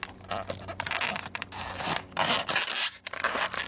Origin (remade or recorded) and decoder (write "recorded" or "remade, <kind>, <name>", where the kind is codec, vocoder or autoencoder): recorded